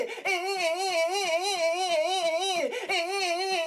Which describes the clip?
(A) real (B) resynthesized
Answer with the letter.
A